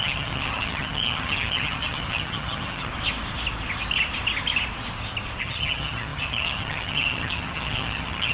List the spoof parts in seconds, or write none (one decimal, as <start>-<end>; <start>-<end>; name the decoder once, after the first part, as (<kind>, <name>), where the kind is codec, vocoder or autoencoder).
0.0-2.9 (vocoder, HiFi-GAN); 5.4-8.3